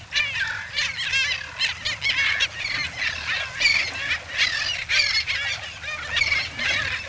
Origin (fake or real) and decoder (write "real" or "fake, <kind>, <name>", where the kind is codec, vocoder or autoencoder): real